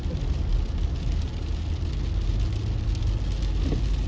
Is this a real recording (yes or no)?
yes